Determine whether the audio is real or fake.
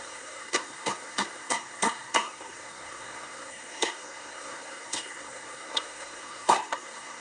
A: fake